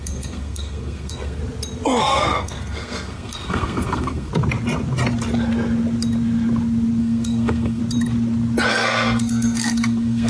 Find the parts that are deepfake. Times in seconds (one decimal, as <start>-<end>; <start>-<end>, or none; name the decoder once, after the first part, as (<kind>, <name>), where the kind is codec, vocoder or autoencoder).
0.0-1.4 (codec, SNAC); 2.0-4.3; 7.0-7.8; 8.7-10.3